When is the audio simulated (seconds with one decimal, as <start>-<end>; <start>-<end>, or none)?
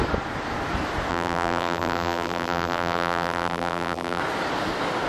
1.1-4.2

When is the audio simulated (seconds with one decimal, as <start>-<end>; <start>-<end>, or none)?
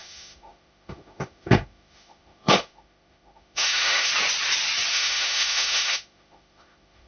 0.0-4.1; 4.9-7.1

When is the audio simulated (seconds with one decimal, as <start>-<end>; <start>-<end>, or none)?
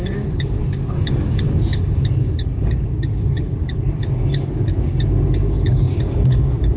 0.0-6.8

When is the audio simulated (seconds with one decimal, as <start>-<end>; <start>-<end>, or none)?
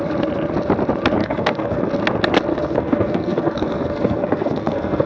1.2-1.9; 2.5-5.1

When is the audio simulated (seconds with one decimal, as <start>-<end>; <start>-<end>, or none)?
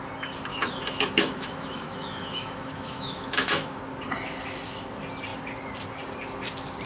0.5-3.8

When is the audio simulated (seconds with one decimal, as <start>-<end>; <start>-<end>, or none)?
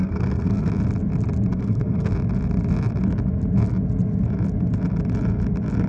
0.0-0.7; 1.5-2.1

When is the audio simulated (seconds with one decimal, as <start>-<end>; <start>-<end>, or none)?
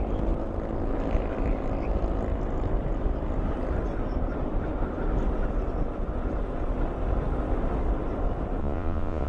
8.6-9.3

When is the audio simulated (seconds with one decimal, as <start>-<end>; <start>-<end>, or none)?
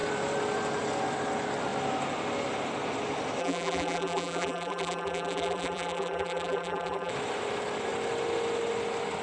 3.4-7.1